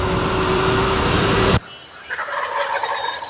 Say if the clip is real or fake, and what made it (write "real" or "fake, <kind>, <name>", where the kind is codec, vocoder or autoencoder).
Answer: fake, vocoder, BigVGAN v2